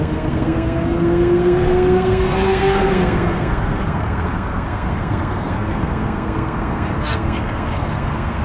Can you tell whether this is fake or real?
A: fake